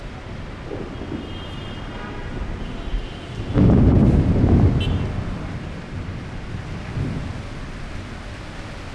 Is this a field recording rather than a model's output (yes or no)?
yes